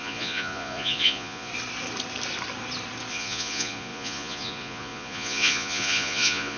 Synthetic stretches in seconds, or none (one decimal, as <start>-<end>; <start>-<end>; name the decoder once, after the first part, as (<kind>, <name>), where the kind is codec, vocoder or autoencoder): 0.0-1.5 (vocoder, Vocos); 3.1-6.6